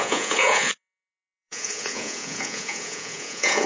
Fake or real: fake